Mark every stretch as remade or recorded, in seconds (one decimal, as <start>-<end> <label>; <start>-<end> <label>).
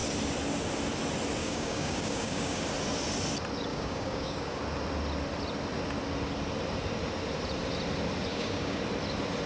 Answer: 0.0-1.4 recorded; 1.4-2.6 remade; 2.6-3.7 recorded; 3.7-4.6 remade; 4.6-8.3 recorded; 8.3-8.8 remade; 8.8-9.5 recorded